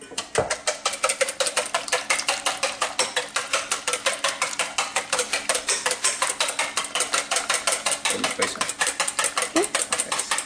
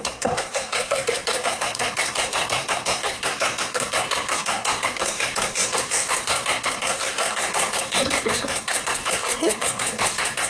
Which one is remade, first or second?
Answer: second